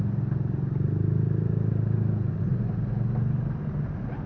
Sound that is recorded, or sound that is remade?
recorded